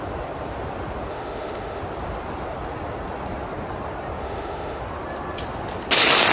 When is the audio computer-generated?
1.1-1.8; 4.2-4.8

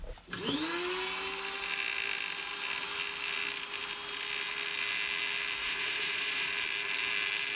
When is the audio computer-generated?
5.6-6.5

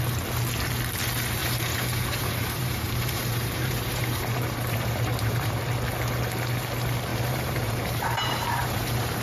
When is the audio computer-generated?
1.4-5.6; 7.1-9.2